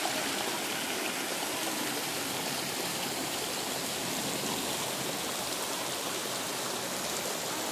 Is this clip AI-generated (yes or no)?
no